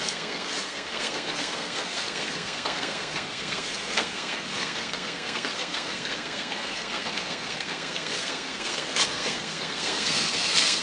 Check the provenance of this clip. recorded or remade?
remade